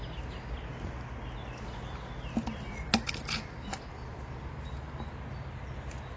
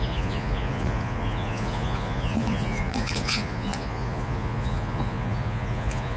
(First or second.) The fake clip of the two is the second